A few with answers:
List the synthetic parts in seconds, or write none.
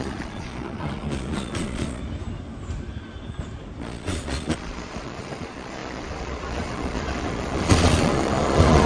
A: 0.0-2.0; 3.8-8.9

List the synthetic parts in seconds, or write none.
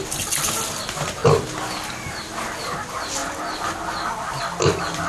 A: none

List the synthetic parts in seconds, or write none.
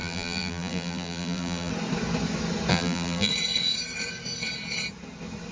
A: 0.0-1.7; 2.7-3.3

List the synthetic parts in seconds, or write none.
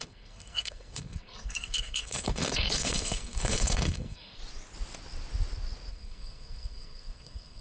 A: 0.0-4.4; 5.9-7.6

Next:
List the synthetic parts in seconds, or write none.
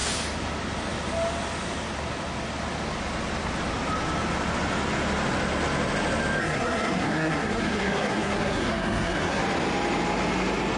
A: 6.4-9.4